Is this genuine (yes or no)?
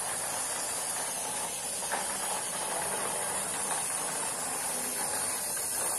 yes